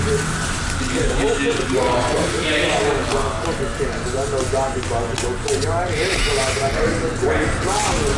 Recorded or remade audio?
recorded